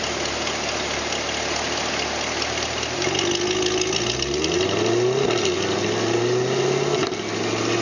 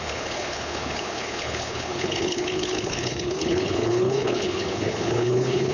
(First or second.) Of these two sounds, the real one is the first